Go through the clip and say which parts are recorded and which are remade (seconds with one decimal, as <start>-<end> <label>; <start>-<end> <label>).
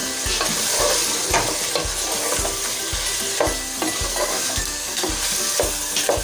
0.0-4.1 recorded; 4.1-5.1 remade; 5.1-6.2 recorded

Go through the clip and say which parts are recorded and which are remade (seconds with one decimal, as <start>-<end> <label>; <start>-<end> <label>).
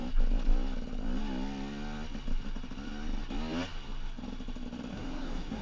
0.0-4.9 recorded; 4.9-5.6 remade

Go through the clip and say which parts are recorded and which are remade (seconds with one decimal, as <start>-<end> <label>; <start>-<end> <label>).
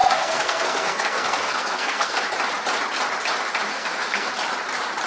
0.0-2.2 remade; 2.2-3.7 recorded; 3.7-4.3 remade; 4.3-5.1 recorded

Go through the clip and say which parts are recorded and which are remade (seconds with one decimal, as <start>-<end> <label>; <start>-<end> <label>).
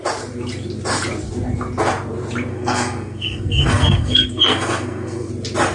0.0-2.5 recorded; 2.5-5.3 remade; 5.3-5.7 recorded